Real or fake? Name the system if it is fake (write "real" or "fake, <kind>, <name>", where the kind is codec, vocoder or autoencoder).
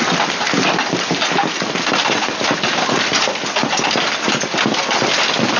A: real